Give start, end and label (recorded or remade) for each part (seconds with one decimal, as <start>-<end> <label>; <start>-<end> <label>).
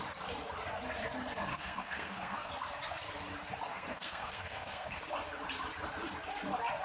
0.0-1.5 recorded; 1.5-2.5 remade; 2.5-3.7 recorded; 3.7-5.0 remade; 5.0-6.8 recorded